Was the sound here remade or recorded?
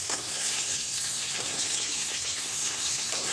remade